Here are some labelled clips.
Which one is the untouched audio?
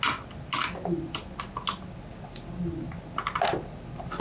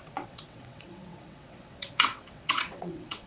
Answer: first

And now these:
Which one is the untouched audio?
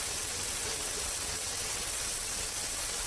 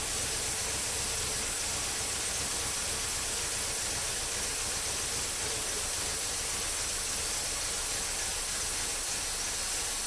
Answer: second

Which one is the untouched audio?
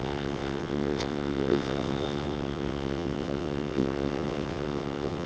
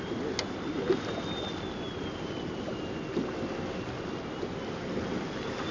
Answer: second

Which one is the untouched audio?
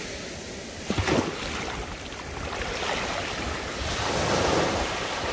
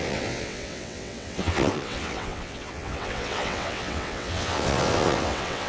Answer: first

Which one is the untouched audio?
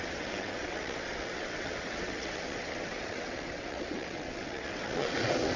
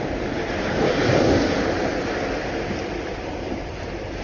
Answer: second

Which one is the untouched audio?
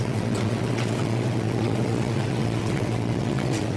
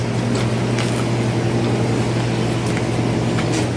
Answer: second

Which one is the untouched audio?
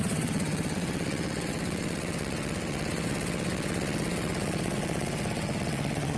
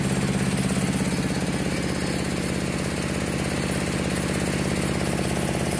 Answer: second